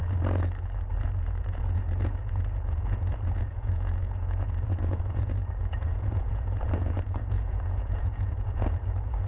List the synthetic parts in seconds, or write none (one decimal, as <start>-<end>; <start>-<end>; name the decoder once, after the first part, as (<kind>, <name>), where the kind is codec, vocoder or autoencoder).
1.0-9.3 (vocoder, Vocos)